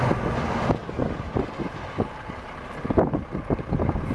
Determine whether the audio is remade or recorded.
recorded